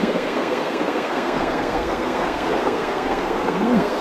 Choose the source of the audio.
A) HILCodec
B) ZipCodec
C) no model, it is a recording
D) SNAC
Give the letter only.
D